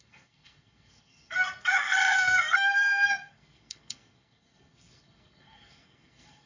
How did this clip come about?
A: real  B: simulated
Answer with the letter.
B